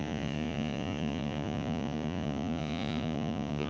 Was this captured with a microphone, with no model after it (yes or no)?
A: no